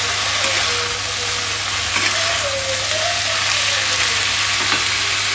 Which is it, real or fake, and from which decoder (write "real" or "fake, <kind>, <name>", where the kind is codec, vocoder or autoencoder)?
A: real